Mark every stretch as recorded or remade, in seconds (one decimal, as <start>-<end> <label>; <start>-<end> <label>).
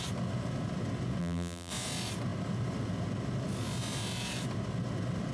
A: 0.0-1.2 recorded; 1.2-1.7 remade; 1.7-5.3 recorded